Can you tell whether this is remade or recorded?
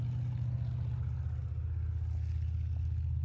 recorded